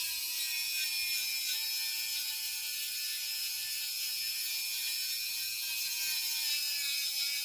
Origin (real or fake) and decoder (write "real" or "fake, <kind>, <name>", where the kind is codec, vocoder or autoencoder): real